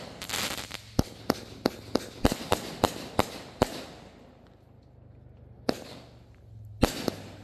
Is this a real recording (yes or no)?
yes